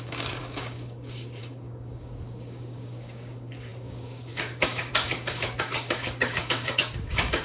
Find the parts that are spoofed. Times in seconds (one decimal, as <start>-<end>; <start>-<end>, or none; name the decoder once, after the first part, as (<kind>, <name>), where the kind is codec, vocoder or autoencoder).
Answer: 0.0-7.4 (codec, DAC)